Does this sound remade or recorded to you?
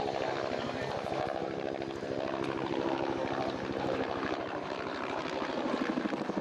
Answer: remade